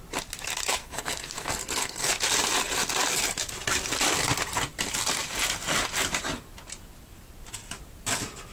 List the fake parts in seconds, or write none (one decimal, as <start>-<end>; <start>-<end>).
0.8-2.1